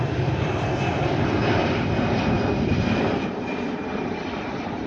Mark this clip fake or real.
fake